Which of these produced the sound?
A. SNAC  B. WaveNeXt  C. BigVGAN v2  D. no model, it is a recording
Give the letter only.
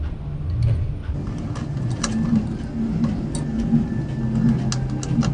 D